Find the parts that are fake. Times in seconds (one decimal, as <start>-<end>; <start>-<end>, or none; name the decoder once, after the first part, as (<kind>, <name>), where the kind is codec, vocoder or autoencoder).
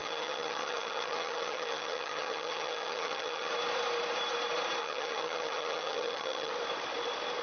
0.0-3.5 (vocoder, HiFi-GAN); 4.8-6.5